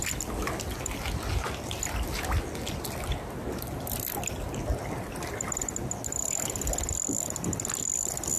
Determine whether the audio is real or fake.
real